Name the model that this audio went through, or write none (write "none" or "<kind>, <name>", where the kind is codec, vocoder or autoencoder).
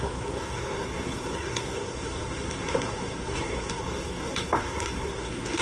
codec, SNAC